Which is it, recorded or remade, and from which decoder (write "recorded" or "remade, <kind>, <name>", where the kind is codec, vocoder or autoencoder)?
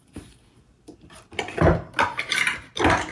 recorded